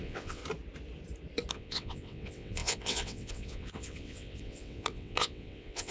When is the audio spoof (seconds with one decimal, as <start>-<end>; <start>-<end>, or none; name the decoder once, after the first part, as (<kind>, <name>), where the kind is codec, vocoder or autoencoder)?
0.0-0.4 (vocoder, WaveNeXt); 1.5-5.9